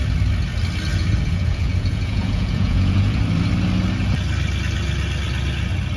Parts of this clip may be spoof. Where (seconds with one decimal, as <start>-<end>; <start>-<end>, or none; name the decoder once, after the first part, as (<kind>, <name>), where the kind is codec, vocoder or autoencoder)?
0.9-3.2 (vocoder, Vocos)